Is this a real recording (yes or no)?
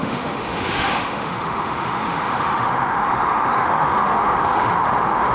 no